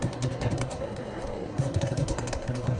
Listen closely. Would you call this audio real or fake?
fake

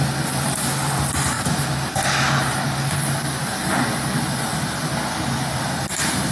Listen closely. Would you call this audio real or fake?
real